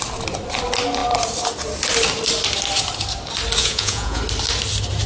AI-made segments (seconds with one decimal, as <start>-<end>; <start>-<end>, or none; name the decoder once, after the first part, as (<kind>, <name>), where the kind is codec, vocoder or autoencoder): 3.6-4.2 (vocoder, Vocos)